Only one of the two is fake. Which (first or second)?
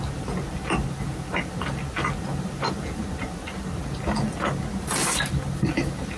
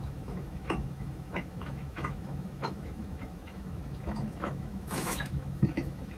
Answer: second